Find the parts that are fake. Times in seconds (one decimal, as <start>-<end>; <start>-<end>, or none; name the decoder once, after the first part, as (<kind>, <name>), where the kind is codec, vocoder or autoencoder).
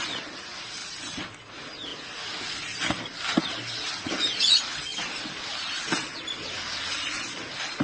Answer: none